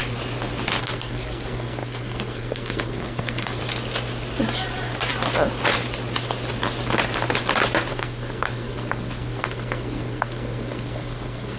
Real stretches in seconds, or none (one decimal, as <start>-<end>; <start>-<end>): 0.0-0.8; 3.6-7.9

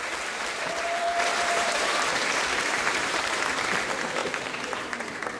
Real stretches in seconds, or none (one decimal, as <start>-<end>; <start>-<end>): 0.0-1.3; 3.4-4.2

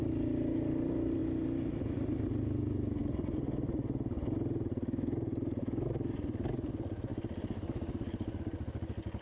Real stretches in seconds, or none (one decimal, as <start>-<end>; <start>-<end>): 0.0-9.2

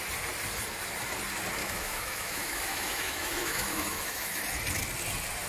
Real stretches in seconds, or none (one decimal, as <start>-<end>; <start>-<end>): 0.0-1.6; 4.4-5.5

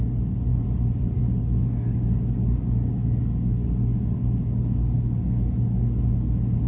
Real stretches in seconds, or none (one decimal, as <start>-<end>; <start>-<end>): 0.0-0.5; 1.2-6.7

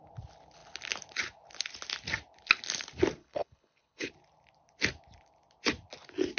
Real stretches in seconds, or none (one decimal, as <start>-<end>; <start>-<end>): 0.0-3.2; 4.1-6.4

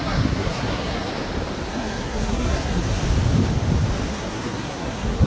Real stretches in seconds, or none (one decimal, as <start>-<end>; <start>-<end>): 1.1-1.7; 3.0-4.1